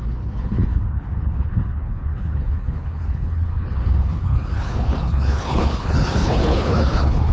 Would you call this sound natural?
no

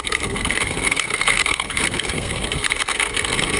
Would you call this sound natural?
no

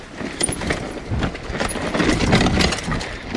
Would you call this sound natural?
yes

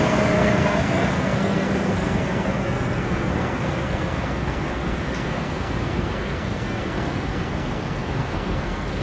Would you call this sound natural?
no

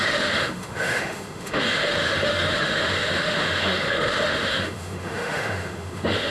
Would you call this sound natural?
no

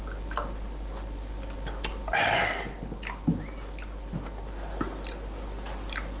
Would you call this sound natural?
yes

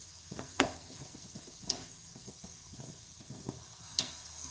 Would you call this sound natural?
no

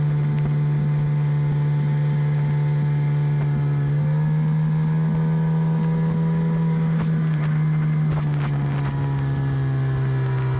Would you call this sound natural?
yes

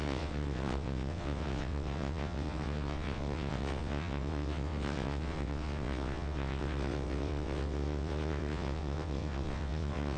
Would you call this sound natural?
no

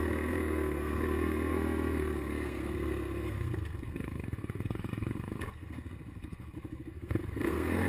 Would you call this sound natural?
no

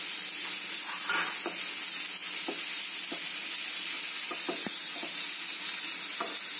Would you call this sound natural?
yes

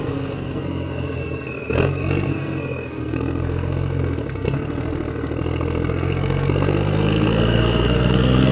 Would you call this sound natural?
no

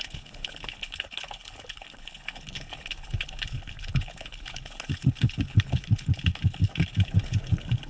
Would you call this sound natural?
no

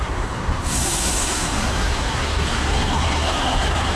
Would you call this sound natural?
no